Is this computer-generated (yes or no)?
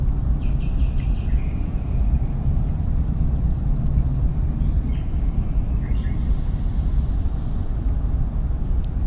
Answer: yes